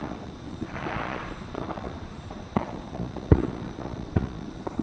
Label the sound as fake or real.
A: fake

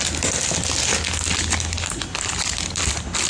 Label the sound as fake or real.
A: real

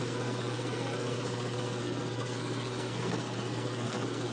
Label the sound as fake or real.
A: fake